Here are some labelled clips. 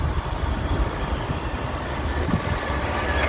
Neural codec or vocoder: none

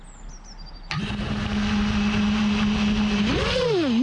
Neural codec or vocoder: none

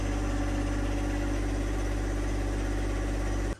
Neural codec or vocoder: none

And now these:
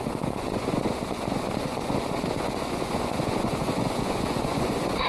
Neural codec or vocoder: vocoder, Vocos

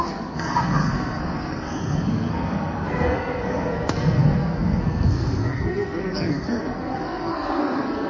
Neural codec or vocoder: codec, SNAC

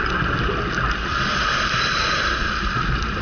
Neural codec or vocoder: none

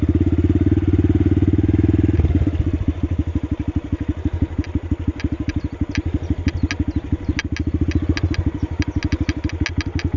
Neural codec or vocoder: none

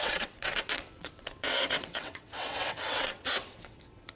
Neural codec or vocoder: vocoder, WaveNeXt